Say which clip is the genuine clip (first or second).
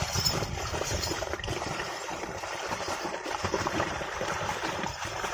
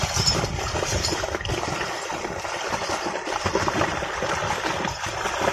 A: second